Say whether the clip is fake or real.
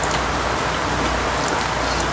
real